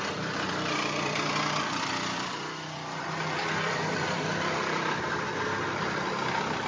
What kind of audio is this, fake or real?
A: fake